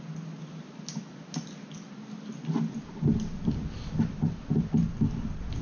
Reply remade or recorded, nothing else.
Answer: recorded